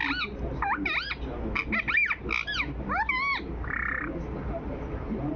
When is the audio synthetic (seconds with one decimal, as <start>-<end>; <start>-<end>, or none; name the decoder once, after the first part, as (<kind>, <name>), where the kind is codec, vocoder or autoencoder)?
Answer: none